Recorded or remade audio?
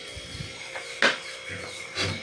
recorded